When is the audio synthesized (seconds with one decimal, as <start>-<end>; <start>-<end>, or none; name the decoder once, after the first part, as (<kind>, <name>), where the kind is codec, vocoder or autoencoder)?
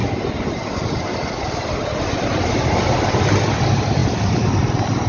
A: none